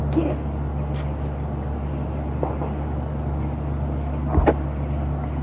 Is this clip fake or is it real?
real